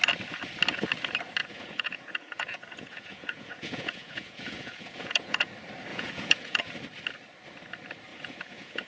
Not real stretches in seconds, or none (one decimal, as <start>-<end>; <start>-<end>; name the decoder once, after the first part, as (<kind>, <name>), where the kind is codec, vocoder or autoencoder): 1.4-5.5 (vocoder, Vocos); 5.9-6.6; 8.1-8.9